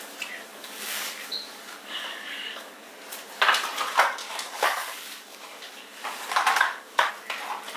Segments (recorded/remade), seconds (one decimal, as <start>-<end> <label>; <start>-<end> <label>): 0.0-0.5 recorded; 0.5-2.9 remade; 2.9-4.2 recorded; 4.2-7.1 remade; 7.1-7.8 recorded